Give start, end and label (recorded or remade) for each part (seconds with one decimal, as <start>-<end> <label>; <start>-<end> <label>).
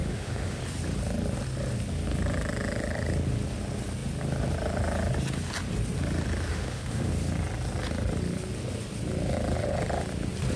0.0-0.6 remade; 0.6-6.5 recorded; 6.5-7.1 remade; 7.1-10.6 recorded